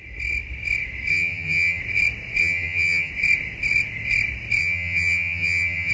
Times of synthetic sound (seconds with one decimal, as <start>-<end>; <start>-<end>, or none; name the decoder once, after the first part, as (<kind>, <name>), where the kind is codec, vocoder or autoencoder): 1.1-1.8 (vocoder, HiFi-GAN); 2.4-3.1; 4.6-5.9